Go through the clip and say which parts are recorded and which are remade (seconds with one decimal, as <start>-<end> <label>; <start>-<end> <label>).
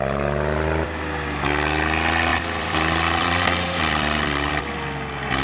0.0-2.3 recorded; 2.3-4.5 remade; 4.5-5.4 recorded